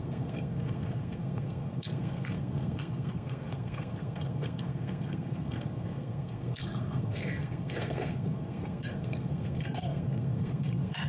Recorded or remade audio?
remade